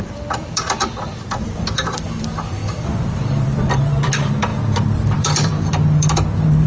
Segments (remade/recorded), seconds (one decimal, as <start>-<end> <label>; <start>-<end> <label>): 0.0-6.7 remade